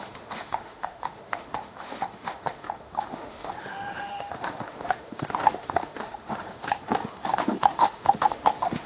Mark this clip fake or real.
fake